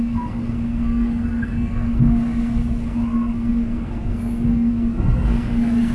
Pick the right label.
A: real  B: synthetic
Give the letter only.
B